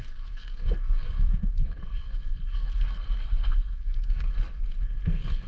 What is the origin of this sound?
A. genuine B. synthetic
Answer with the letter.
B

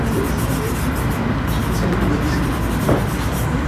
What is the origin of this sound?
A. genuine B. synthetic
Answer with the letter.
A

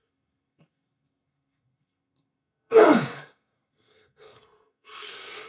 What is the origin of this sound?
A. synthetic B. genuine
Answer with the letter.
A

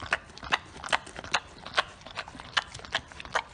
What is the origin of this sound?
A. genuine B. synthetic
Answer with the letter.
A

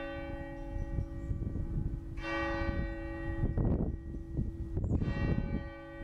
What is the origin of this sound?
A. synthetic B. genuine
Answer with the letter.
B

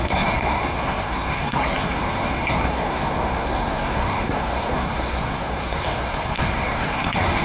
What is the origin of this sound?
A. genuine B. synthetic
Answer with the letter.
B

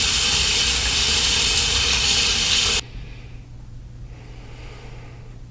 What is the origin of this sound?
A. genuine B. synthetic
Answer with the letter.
A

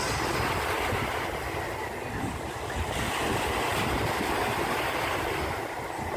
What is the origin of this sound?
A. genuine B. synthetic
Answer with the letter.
A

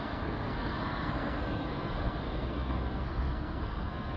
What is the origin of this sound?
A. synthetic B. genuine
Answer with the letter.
A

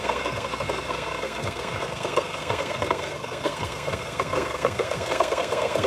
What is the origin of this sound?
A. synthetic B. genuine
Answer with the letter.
A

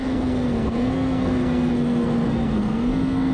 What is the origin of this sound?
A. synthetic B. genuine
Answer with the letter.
A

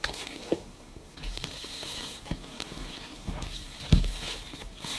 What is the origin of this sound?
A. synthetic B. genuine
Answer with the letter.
A